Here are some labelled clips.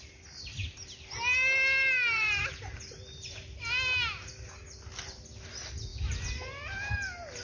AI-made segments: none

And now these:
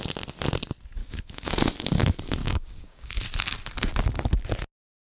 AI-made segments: 1.0-1.5 (codec, DAC); 2.4-3.1